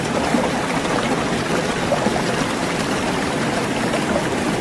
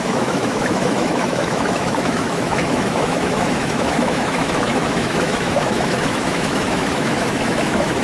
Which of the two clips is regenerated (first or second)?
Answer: second